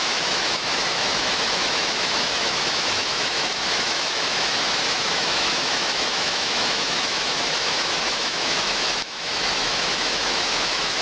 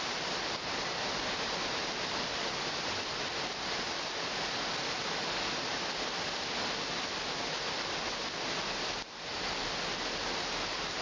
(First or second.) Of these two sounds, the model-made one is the first